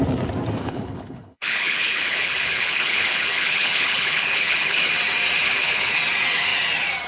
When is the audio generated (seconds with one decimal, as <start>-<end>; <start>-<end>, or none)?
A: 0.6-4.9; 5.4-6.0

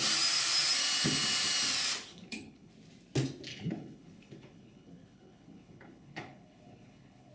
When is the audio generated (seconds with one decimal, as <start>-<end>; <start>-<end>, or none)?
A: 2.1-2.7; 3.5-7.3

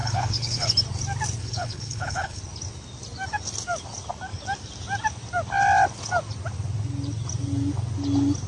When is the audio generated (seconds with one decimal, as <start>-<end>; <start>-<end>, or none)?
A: 0.0-0.7; 1.4-2.4